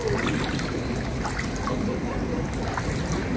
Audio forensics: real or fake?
real